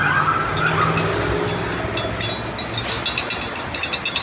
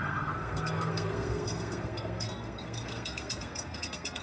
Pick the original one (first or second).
first